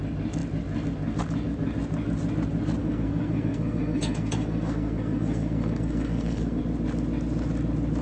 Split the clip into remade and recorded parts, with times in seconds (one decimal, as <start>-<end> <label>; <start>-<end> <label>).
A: 0.0-2.8 recorded; 2.8-6.6 remade; 6.6-8.0 recorded